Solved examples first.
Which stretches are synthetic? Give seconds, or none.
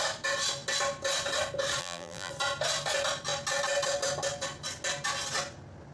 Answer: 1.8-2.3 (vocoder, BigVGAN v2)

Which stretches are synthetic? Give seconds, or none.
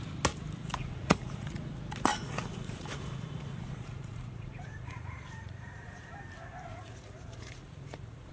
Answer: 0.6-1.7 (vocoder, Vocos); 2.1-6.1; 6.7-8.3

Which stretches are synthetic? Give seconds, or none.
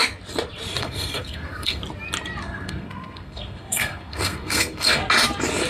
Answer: 0.8-1.8 (codec, SNAC); 2.4-5.0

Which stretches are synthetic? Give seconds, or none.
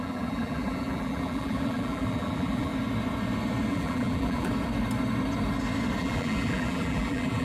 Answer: 0.0-2.7 (vocoder, BigVGAN v2); 3.7-4.5; 6.0-7.4